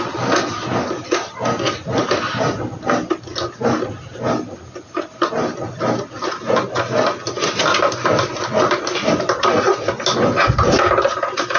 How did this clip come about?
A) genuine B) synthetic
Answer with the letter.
A